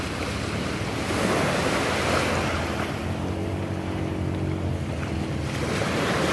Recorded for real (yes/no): yes